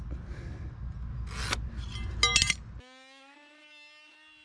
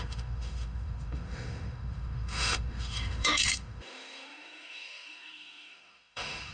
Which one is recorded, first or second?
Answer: first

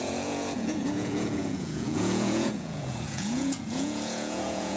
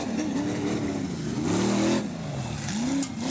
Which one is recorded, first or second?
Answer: second